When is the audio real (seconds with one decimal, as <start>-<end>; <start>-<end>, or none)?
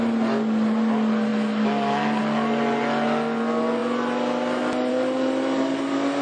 0.0-6.2